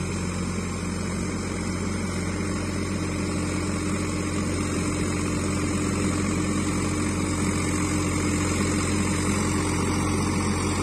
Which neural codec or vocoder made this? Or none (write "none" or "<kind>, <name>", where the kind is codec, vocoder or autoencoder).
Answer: none